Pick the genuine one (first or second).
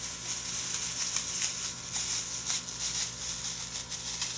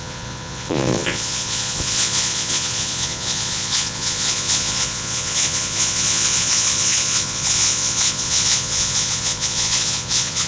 first